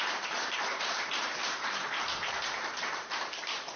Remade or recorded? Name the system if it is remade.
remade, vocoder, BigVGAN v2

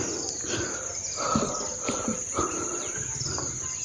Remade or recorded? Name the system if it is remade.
recorded